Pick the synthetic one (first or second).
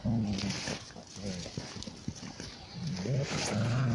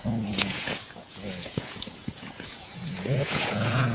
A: second